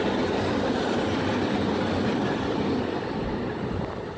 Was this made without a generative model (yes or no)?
yes